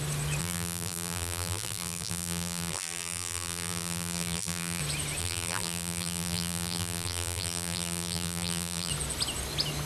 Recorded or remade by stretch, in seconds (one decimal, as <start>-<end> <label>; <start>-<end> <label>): 0.0-0.4 recorded; 0.4-4.8 remade; 4.8-5.2 recorded; 5.2-8.9 remade; 8.9-9.9 recorded